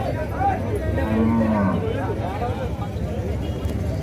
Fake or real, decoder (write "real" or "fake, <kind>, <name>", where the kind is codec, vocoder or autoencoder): real